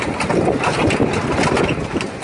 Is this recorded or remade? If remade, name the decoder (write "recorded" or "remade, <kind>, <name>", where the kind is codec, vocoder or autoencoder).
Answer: recorded